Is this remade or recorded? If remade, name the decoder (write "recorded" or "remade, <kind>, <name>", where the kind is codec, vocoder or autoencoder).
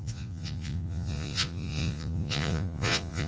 remade, vocoder, Vocos